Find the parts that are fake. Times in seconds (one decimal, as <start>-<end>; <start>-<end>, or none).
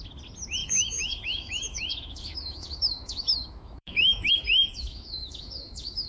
0.6-4.3; 4.7-6.1